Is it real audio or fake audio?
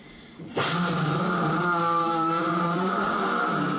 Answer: fake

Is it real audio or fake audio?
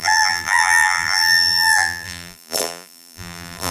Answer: fake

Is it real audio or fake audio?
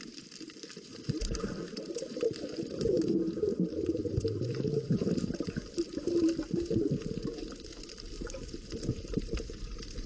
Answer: fake